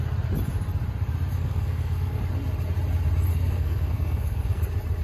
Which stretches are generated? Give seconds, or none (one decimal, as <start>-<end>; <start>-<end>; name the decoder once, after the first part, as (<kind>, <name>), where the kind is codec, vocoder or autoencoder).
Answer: 1.3-2.2 (codec, SNAC); 3.3-4.6